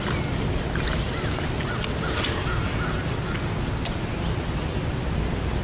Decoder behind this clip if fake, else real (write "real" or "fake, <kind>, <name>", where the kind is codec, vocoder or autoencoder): real